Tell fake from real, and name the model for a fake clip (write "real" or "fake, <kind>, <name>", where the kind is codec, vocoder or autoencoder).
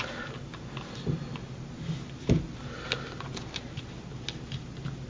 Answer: real